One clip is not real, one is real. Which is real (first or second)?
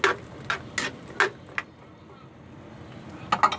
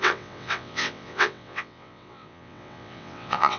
first